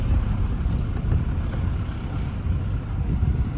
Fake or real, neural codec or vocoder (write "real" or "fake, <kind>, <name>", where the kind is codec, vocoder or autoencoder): real